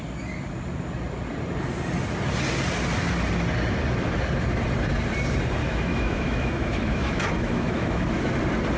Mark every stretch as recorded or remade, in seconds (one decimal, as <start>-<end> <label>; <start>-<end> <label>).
0.0-5.6 recorded; 5.6-8.3 remade; 8.3-8.8 recorded